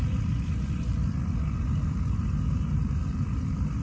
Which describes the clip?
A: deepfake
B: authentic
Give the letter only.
B